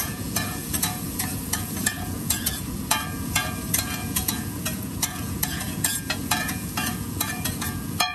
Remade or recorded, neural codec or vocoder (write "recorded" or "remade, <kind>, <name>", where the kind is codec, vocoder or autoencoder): remade, vocoder, Vocos